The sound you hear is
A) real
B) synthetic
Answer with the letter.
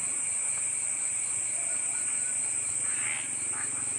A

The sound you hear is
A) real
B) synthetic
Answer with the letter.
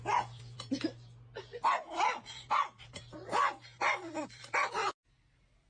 A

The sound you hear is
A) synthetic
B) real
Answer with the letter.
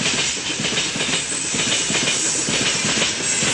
B